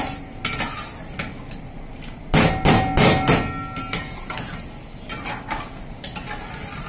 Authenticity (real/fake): real